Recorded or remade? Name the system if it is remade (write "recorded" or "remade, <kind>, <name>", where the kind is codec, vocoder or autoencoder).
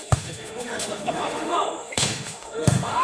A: remade, autoencoder, DAC-VAE